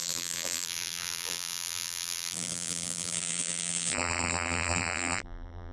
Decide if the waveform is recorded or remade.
remade